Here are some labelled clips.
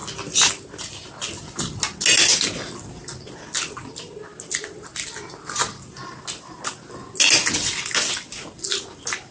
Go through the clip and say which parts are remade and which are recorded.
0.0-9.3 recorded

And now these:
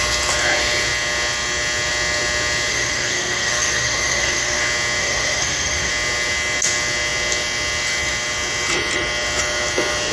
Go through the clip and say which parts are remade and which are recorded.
0.0-2.7 recorded; 2.7-4.6 remade; 4.6-5.0 recorded; 5.0-5.9 remade; 5.9-10.1 recorded